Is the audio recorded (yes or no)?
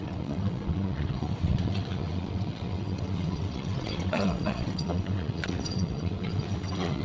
no